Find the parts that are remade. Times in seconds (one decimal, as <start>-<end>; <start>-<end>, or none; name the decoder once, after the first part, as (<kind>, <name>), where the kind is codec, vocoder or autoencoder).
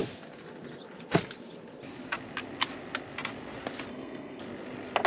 3.9-4.4 (codec, SNAC)